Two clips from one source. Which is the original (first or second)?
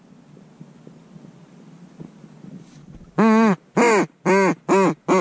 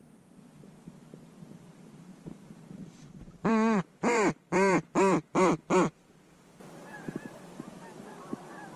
first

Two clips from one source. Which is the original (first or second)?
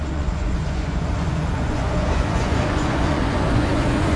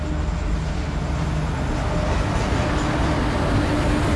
second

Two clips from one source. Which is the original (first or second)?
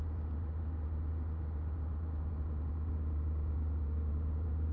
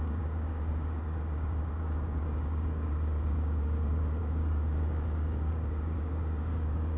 first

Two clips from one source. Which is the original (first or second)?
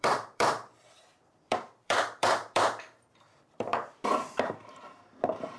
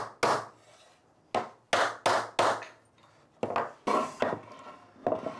second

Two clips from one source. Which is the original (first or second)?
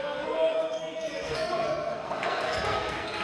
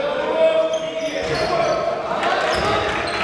second